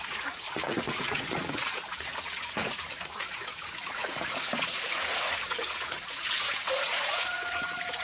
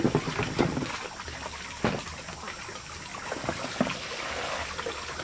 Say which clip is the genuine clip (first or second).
second